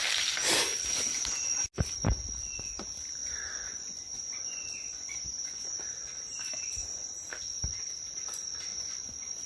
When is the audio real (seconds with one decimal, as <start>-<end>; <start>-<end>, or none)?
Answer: 0.0-3.2; 5.7-6.8; 7.3-8.7